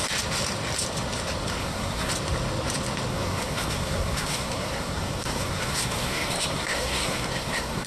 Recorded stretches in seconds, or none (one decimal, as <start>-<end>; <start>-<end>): 0.0-1.6; 2.1-3.1